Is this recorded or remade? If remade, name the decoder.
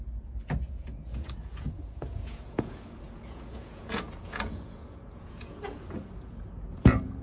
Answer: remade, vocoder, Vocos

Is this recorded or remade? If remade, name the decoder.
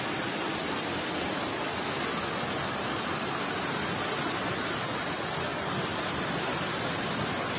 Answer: recorded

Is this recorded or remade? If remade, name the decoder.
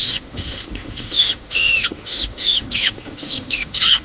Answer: remade, autoencoder, DAC-VAE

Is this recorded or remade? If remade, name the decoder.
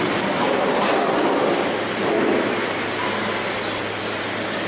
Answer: remade, vocoder, BigVGAN v2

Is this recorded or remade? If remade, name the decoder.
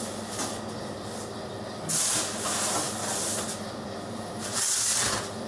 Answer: remade, vocoder, BigVGAN v2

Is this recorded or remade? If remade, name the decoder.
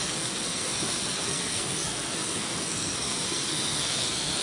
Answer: remade, codec, SNAC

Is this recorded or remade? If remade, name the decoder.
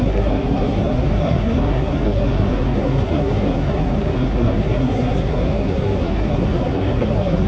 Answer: remade, codec, SNAC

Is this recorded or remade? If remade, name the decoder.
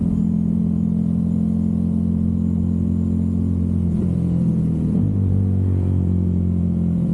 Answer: remade, vocoder, Vocos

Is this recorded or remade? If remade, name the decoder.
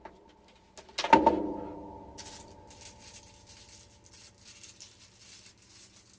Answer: recorded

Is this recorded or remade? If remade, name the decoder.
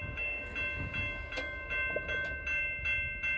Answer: recorded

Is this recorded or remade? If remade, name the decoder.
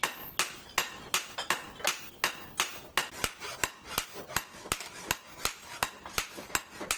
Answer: recorded